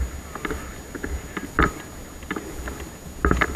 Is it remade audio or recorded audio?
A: recorded